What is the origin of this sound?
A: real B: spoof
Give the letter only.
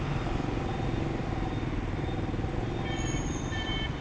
A